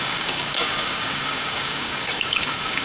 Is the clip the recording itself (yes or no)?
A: no